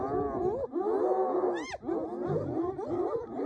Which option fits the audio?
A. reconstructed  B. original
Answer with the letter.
B